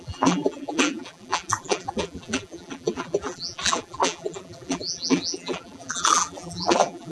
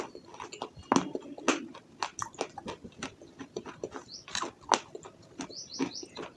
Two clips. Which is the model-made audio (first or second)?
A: first